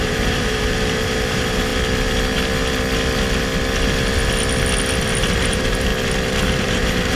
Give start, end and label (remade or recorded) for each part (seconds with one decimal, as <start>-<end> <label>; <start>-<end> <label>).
0.0-1.7 remade; 1.7-5.2 recorded; 5.2-5.9 remade; 5.9-6.6 recorded; 6.6-7.2 remade